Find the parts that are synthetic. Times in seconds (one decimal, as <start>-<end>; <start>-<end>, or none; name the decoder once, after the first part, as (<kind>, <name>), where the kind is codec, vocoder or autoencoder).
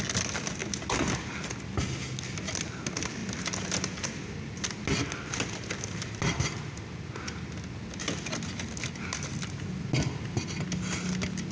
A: none